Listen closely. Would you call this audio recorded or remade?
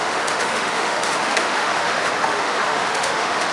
remade